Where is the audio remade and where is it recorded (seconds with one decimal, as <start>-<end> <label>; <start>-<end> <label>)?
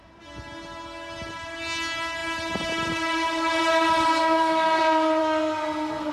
0.0-4.2 recorded; 4.2-4.8 remade; 4.8-5.2 recorded; 5.2-6.1 remade